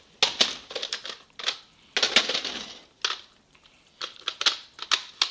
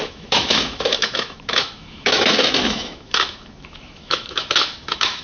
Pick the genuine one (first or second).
first